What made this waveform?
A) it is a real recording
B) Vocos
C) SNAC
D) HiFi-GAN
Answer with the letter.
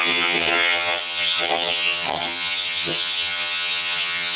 D